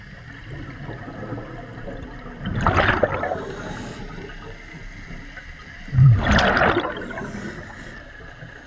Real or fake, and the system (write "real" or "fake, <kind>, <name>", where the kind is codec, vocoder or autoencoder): real